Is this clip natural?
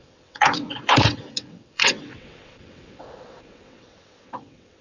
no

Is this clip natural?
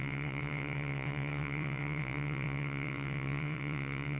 no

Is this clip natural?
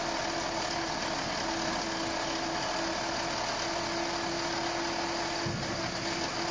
yes